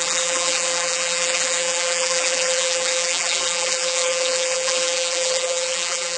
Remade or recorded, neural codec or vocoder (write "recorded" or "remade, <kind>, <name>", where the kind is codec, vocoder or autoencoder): remade, vocoder, BigVGAN v2